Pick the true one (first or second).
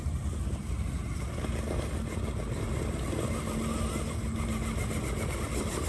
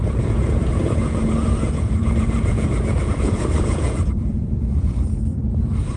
first